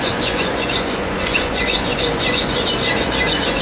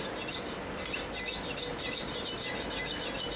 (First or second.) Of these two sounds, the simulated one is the first